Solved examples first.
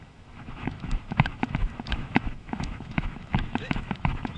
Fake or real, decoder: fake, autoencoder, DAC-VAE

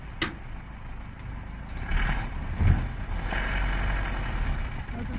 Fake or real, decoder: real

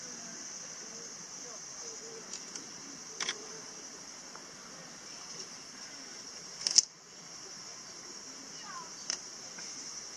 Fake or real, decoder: real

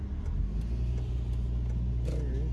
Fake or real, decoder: real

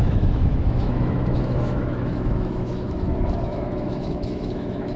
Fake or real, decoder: fake, autoencoder, DAC-VAE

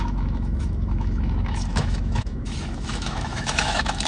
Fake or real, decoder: fake, autoencoder, DAC-VAE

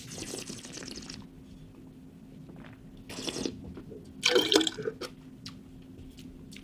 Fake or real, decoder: real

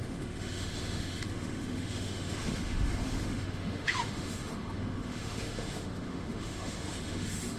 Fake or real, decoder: fake, autoencoder, DAC-VAE